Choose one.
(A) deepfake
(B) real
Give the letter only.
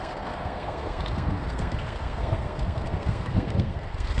A